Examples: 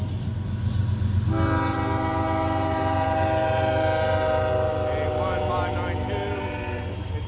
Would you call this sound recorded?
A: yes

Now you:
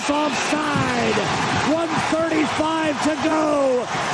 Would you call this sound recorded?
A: yes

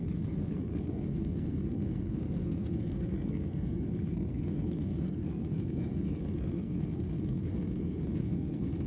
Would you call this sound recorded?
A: no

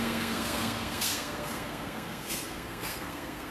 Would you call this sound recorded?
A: no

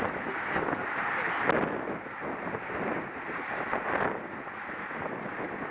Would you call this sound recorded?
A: yes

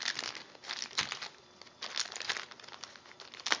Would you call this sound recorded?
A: yes